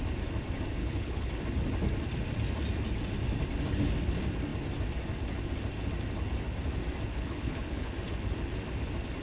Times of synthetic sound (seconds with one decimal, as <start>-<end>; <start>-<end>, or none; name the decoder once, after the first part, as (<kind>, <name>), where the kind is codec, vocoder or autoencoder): 0.8-1.3 (codec, HILCodec); 7.1-7.9